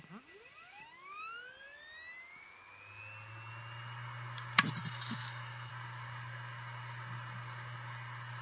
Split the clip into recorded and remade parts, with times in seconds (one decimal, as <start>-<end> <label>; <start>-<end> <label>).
0.0-4.8 recorded; 4.8-5.7 remade; 5.7-8.4 recorded